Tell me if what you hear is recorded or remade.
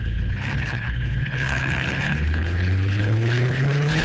remade